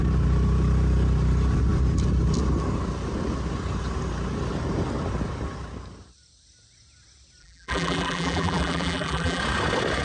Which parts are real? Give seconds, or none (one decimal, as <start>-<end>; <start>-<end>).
0.0-7.4; 9.4-10.0